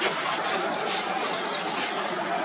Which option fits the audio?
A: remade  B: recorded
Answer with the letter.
B